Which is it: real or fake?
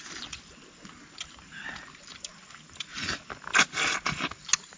real